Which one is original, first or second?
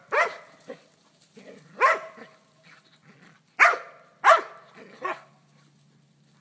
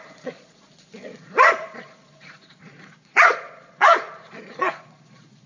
first